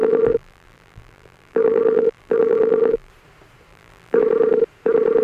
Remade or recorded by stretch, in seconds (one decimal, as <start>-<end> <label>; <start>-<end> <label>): 0.0-3.1 remade; 3.1-3.7 recorded; 3.7-4.2 remade; 4.2-5.2 recorded